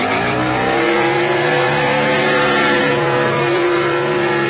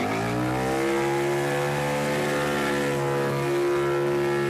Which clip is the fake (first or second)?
first